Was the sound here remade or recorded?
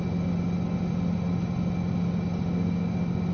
recorded